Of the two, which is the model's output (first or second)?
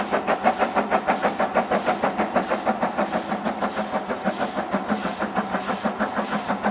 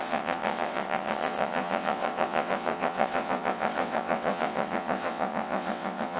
second